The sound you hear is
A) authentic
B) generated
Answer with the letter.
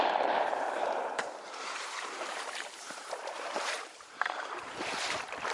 B